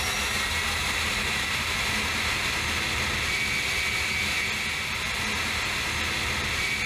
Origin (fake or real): real